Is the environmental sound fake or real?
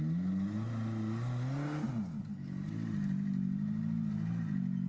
real